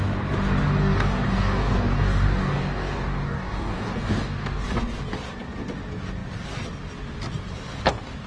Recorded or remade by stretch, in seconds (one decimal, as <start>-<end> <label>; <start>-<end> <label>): 0.0-0.8 recorded; 0.8-4.6 remade; 4.6-8.3 recorded